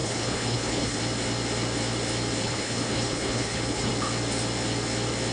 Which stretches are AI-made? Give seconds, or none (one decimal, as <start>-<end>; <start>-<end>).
0.0-1.0; 2.4-3.9